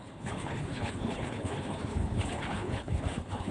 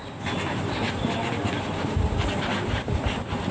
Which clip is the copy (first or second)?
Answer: first